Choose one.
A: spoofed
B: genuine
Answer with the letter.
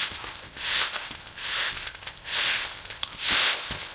A